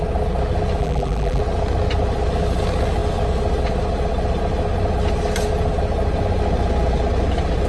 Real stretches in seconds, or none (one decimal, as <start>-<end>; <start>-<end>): 0.0-0.8; 1.4-7.7